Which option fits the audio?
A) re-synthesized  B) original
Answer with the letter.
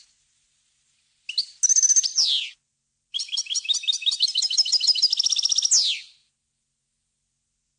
B